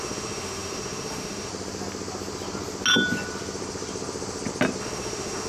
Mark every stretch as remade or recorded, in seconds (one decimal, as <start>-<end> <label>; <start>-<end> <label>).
0.0-1.5 remade; 1.5-4.8 recorded; 4.8-5.5 remade

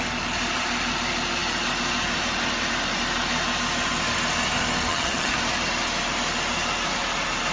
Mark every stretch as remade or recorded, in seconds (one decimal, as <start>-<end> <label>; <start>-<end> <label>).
0.0-4.9 recorded; 4.9-5.4 remade; 5.4-7.5 recorded